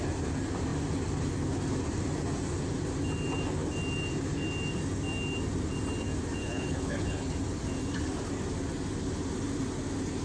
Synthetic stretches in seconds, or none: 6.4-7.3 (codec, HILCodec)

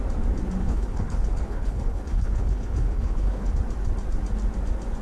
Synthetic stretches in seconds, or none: 0.6-3.5 (codec, HILCodec)

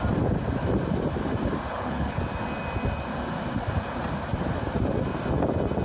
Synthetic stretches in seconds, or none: 1.7-2.2 (codec, HILCodec)

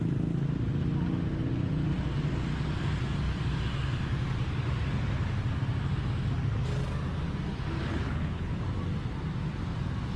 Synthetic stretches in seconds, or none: 7.9-8.5 (codec, HILCodec)